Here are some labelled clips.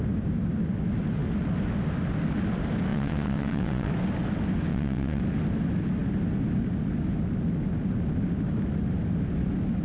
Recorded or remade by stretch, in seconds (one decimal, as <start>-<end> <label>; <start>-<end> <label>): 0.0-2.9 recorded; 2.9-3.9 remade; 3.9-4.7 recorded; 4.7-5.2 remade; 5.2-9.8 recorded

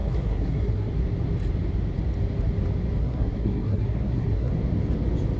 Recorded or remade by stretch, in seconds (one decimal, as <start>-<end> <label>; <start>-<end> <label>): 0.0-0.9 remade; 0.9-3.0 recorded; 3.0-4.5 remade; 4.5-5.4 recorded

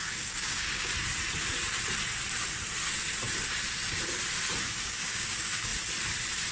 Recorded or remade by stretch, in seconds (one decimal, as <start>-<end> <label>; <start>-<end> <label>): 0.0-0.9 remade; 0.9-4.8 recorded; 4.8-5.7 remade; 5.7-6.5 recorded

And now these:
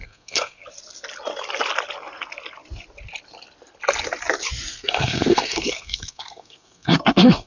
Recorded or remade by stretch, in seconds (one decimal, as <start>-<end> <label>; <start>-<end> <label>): 0.0-0.6 remade; 0.6-4.7 recorded; 4.7-7.5 remade